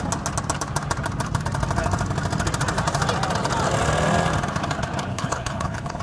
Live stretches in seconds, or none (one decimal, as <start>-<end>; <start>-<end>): 0.0-5.1